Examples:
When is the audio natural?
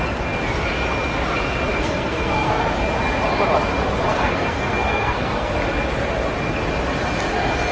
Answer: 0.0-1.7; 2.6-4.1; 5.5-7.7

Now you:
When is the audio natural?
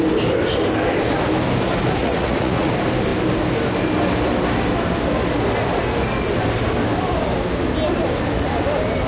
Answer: 0.0-2.0; 2.7-9.1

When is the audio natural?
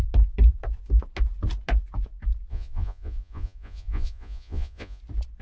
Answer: 0.0-2.5; 5.0-5.4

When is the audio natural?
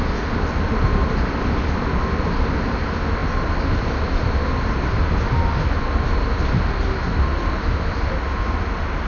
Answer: 0.0-9.1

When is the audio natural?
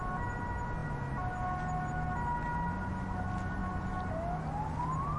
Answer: 0.0-5.2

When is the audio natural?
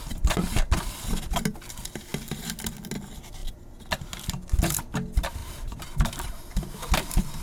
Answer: 0.0-7.4